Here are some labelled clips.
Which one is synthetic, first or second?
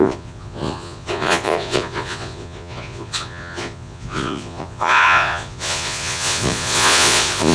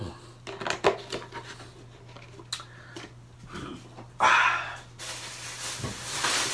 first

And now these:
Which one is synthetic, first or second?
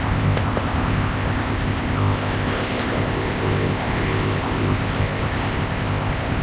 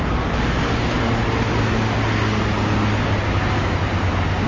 first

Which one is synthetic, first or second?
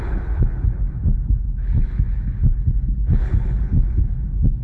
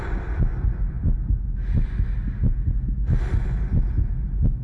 first